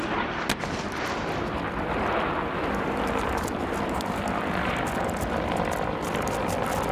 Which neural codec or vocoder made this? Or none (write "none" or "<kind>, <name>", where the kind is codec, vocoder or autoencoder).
none